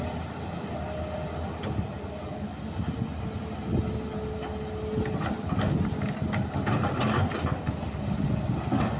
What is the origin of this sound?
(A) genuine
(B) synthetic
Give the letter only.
A